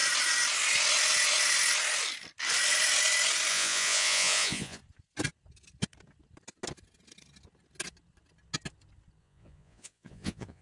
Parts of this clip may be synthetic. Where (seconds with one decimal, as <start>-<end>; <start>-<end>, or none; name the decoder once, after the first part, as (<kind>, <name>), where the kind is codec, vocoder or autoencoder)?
3.5-4.8 (vocoder, Vocos); 9.2-10.6